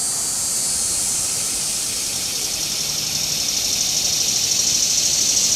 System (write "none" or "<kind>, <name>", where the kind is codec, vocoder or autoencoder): none